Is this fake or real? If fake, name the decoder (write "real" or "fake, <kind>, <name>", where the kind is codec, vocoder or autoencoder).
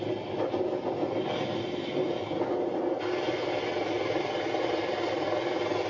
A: real